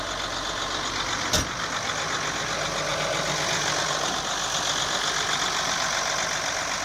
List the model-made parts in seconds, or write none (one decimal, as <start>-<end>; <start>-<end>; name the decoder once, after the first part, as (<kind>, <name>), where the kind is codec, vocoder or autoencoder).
none